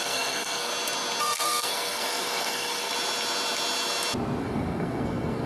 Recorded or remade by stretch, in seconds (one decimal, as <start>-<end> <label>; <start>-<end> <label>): 0.0-0.7 remade; 0.7-1.2 recorded; 1.2-2.9 remade; 2.9-4.4 recorded; 4.4-5.5 remade